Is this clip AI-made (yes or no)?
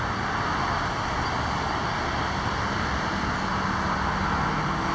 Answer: no